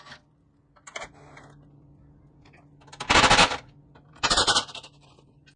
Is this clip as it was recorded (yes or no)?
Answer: yes